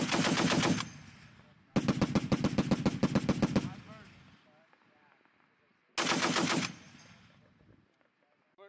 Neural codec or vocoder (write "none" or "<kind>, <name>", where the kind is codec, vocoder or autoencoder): none